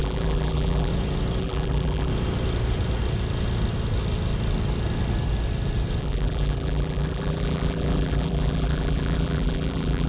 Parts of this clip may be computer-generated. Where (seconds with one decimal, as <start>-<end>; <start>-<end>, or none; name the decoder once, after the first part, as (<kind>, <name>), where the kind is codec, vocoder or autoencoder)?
0.0-0.9 (vocoder, BigVGAN v2); 1.4-2.1; 6.0-10.1